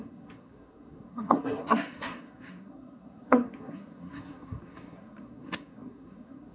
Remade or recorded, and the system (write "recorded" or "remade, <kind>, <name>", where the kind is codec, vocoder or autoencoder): remade, codec, SNAC